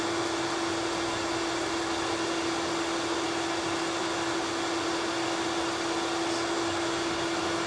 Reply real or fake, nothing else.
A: real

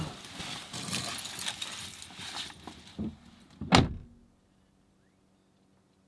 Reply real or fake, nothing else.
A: real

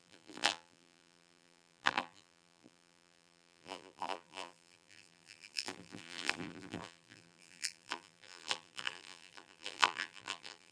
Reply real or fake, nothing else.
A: fake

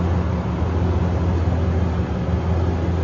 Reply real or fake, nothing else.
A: real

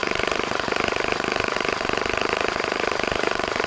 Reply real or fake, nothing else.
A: fake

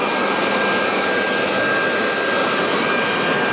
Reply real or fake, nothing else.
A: real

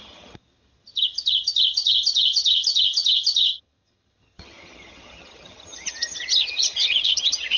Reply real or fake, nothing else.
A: fake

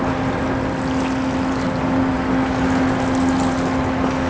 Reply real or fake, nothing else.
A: real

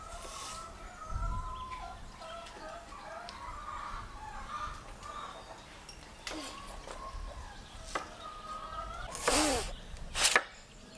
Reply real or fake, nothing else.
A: real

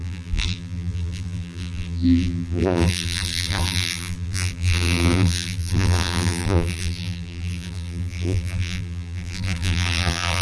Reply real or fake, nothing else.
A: fake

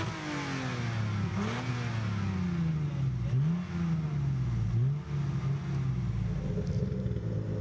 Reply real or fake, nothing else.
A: real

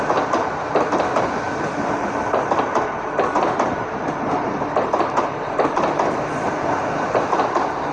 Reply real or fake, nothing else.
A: fake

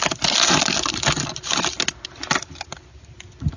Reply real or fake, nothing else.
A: real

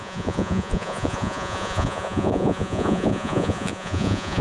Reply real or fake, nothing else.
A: fake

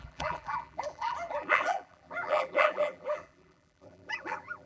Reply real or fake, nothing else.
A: fake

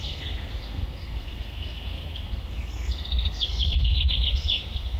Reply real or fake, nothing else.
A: fake